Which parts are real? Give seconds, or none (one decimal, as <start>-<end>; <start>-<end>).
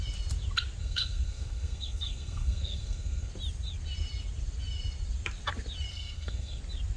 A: 0.0-0.8; 3.3-5.9; 6.6-7.0